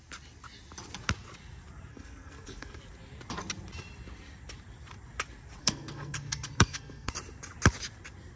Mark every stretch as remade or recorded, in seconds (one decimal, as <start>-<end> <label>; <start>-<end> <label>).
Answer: 0.0-1.9 recorded; 1.9-2.8 remade; 2.8-5.6 recorded; 5.6-7.1 remade; 7.1-8.4 recorded